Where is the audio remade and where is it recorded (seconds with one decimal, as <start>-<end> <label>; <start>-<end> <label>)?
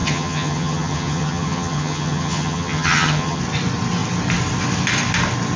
0.0-3.4 remade; 3.4-5.6 recorded